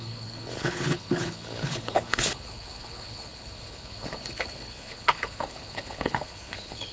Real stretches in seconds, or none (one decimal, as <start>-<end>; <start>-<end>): none